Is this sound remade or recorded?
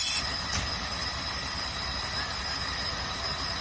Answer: recorded